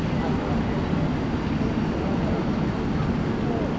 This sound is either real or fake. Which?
real